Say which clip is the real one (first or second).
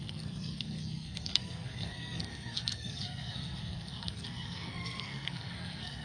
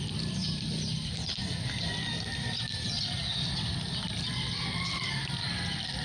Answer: second